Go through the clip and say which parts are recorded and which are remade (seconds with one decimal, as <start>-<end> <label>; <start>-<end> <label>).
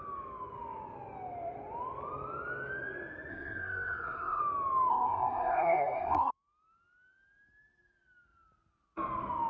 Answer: 0.0-3.3 recorded; 3.3-4.4 remade; 4.4-4.9 recorded; 4.9-6.3 remade; 6.3-9.5 recorded